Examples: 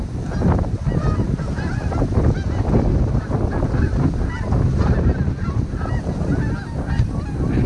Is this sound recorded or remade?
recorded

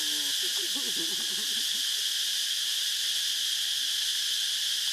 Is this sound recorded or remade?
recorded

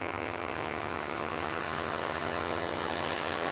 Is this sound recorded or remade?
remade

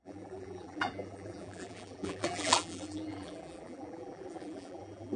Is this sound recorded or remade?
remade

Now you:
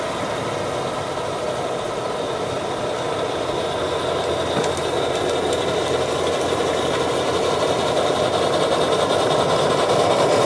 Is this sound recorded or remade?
recorded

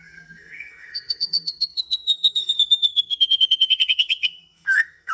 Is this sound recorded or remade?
remade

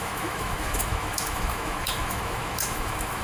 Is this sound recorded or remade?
remade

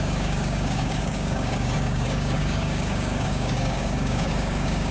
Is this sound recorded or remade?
remade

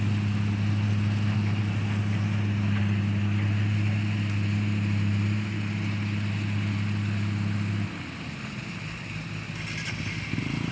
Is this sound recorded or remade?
recorded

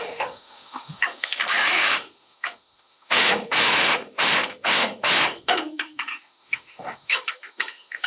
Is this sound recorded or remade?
remade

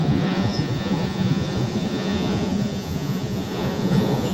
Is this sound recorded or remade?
remade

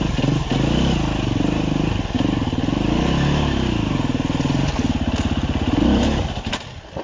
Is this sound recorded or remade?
recorded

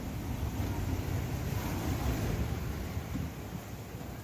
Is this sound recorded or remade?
recorded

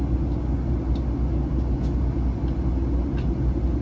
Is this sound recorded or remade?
recorded